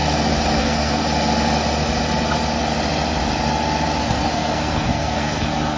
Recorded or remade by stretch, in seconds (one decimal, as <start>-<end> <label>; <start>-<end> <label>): 0.0-0.6 recorded; 0.6-1.0 remade; 1.0-4.0 recorded; 4.0-5.8 remade